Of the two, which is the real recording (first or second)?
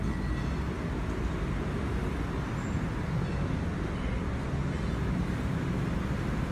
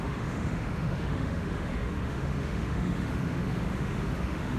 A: first